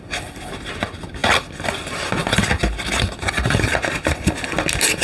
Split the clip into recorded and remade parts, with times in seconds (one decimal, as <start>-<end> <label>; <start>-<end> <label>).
0.0-5.0 recorded